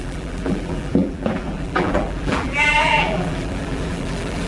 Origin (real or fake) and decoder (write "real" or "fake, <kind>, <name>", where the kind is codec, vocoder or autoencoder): fake, vocoder, BigVGAN v2